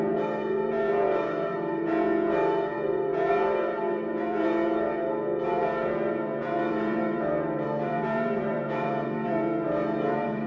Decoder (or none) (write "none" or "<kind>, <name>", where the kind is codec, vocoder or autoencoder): vocoder, Vocos